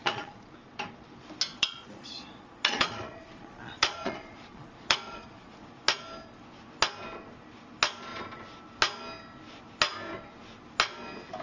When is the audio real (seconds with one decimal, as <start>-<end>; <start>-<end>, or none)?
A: 0.5-1.5; 5.7-11.4